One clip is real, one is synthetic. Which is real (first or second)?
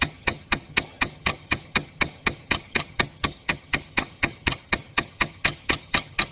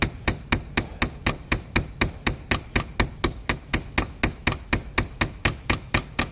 second